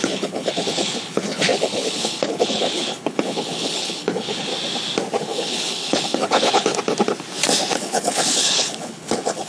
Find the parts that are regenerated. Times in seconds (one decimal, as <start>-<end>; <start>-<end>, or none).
0.0-4.5; 5.2-6.7; 7.7-9.5